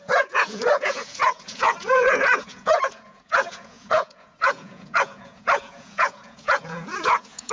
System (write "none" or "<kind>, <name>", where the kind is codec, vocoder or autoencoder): vocoder, Vocos